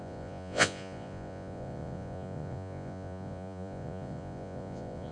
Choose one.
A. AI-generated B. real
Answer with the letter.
A